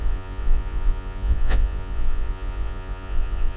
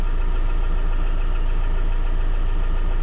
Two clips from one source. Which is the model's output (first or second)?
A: first